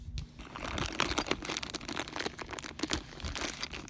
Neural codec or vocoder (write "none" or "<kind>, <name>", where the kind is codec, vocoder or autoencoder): none